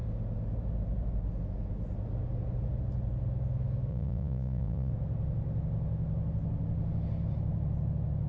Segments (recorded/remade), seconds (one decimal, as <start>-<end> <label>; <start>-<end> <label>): 0.0-3.9 recorded; 3.9-4.9 remade; 4.9-8.3 recorded

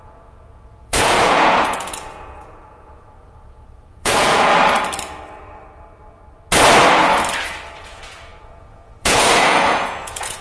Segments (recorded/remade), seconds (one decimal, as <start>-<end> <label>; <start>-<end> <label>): 0.0-4.5 remade; 4.5-7.8 recorded; 7.8-10.4 remade

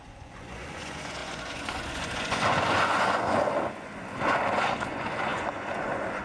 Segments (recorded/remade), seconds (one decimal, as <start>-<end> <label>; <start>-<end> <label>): 0.0-6.2 remade

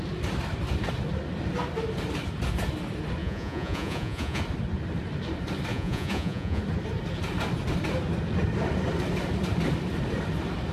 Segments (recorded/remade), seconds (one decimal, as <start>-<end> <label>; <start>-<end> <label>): 0.0-3.2 recorded; 3.2-4.4 remade; 4.4-5.7 recorded; 5.7-6.6 remade; 6.6-10.7 recorded

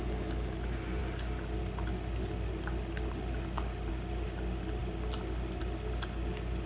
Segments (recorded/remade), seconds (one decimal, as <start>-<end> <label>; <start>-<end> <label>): 0.0-6.7 recorded

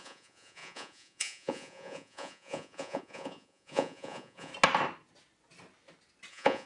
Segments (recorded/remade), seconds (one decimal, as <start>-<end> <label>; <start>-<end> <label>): 0.0-4.5 remade; 4.5-6.3 recorded; 6.3-6.7 remade

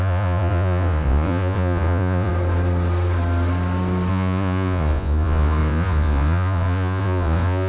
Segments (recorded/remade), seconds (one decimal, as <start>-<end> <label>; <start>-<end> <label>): 0.0-2.3 remade; 2.3-4.1 recorded; 4.1-7.7 remade